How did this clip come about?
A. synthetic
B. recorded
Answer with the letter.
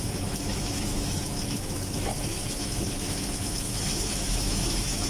A